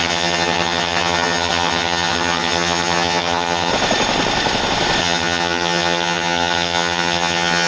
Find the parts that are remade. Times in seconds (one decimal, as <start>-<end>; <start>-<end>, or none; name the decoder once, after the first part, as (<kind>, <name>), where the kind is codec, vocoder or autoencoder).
0.0-3.7 (vocoder, HiFi-GAN); 5.0-7.7